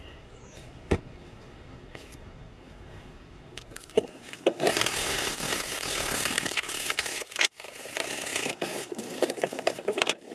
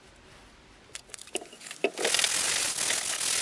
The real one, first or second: second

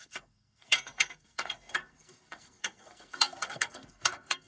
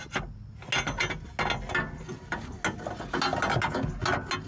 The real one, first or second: second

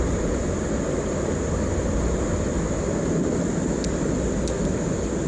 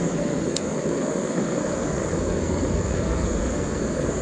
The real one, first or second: first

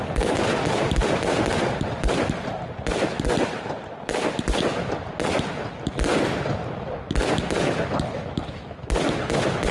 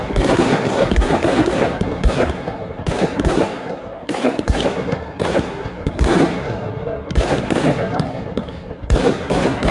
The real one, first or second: first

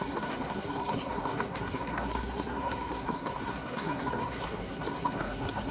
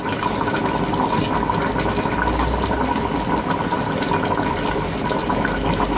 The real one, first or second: second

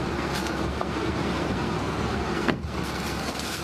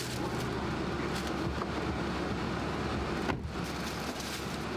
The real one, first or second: second